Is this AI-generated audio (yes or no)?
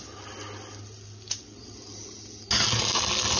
no